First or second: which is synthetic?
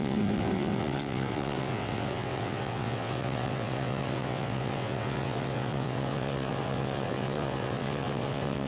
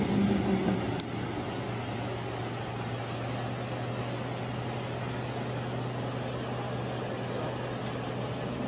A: first